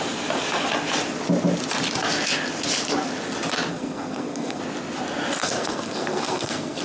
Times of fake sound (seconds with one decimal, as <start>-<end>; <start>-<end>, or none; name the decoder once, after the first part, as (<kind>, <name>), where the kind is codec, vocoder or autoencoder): 3.7-4.6 (codec, SNAC); 5.4-6.8